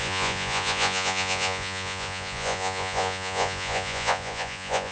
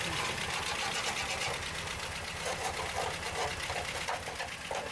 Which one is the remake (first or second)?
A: first